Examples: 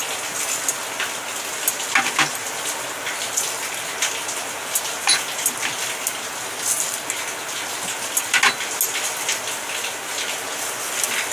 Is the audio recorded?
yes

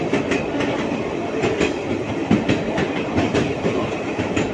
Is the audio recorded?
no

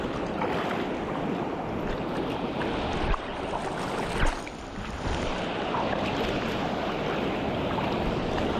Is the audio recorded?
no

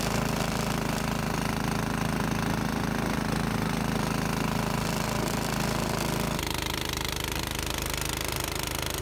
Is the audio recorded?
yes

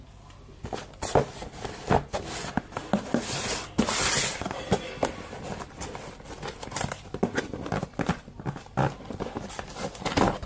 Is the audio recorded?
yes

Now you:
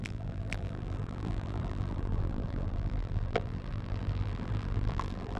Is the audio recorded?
no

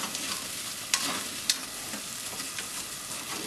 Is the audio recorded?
no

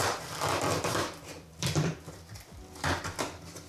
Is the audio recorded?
no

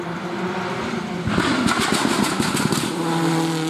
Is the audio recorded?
no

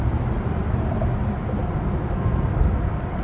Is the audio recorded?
yes